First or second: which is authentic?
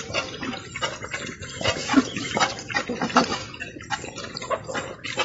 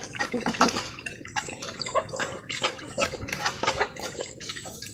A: first